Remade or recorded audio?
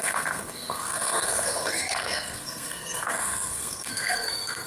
remade